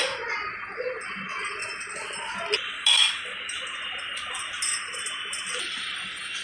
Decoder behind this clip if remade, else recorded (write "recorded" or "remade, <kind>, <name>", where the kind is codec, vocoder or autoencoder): recorded